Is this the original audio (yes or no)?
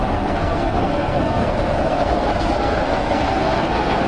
no